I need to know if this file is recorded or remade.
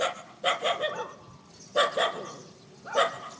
recorded